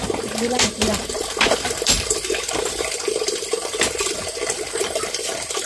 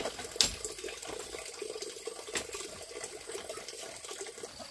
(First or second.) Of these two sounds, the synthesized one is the first